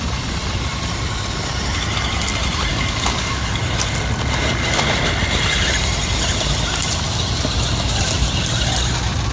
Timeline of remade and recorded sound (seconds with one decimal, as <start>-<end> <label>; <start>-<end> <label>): 0.0-2.7 recorded; 2.7-3.6 remade; 3.6-9.3 recorded